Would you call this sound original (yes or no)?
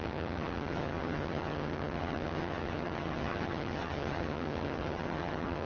no